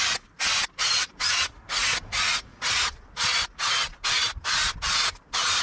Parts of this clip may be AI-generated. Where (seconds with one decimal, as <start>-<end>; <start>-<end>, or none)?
2.5-3.1